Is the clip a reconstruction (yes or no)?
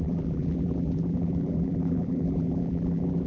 yes